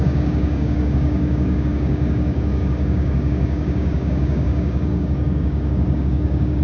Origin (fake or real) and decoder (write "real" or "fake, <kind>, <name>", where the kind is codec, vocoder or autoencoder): fake, codec, DAC